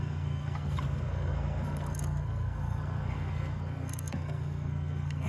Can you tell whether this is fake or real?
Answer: fake